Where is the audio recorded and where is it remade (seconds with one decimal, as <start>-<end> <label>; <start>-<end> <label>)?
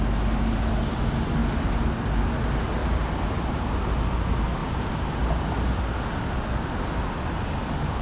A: 0.0-2.8 recorded; 2.8-3.8 remade; 3.8-4.6 recorded; 4.6-5.8 remade; 5.8-8.0 recorded